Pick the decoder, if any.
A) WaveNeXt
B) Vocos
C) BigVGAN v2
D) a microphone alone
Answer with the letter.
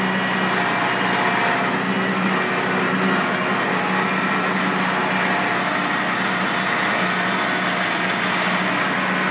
D